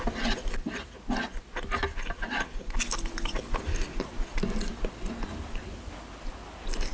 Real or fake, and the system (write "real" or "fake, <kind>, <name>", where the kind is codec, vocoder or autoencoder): real